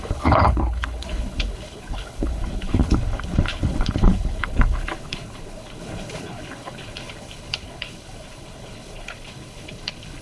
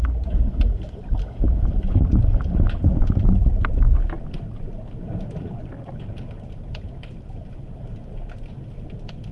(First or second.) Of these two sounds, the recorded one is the second